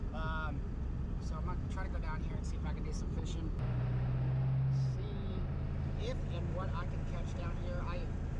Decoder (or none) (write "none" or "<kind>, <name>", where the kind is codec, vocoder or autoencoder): none